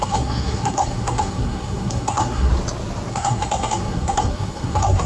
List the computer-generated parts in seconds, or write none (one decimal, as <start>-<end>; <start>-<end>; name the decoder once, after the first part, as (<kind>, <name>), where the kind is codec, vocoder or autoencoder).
0.0-2.5 (codec, SNAC); 3.1-5.1